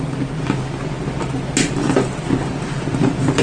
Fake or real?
real